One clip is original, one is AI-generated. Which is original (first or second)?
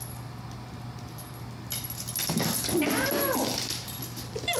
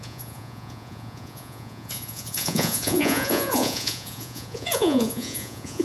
first